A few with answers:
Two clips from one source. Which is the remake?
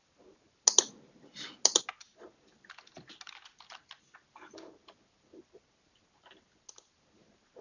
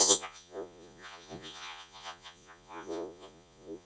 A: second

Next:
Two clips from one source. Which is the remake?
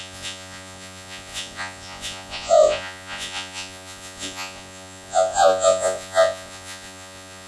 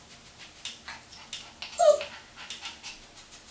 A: first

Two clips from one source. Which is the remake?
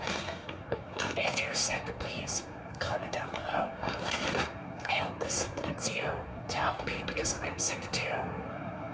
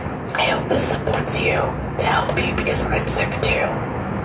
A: first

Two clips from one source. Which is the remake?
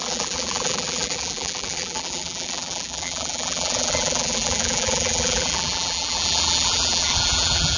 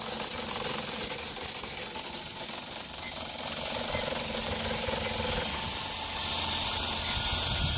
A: first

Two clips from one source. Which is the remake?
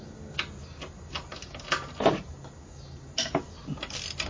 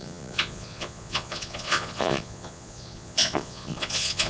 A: second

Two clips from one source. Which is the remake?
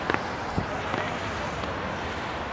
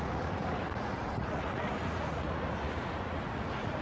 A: second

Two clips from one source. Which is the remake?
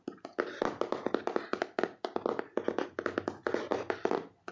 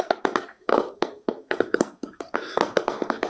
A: second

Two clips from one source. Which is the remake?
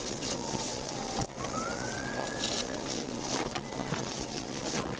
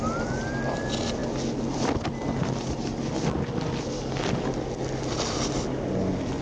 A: first